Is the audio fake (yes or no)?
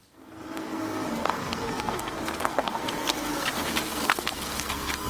yes